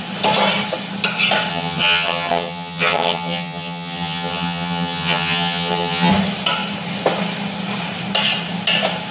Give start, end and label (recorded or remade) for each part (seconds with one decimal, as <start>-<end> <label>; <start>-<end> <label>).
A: 0.0-1.5 recorded; 1.5-6.1 remade; 6.1-9.1 recorded